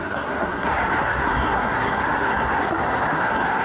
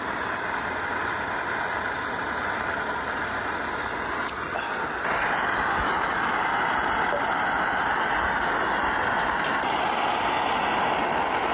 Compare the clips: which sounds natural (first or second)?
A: second